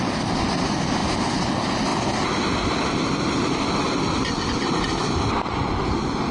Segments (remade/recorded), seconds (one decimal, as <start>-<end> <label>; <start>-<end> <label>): 0.0-6.3 recorded